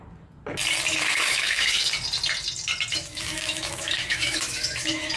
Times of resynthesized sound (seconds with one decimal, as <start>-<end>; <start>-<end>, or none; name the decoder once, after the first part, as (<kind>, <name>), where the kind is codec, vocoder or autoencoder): 0.9-1.9 (autoencoder, DAC-VAE); 2.9-5.2